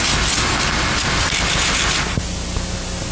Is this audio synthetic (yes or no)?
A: no